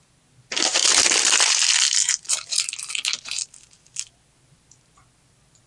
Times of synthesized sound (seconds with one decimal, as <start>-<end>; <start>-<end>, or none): none